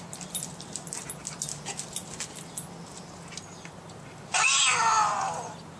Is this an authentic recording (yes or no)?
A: yes